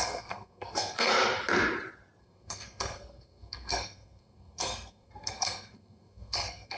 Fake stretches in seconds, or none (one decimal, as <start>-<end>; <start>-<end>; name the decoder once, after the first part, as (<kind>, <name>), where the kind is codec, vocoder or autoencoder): 0.0-1.1 (codec, SNAC); 2.2-6.8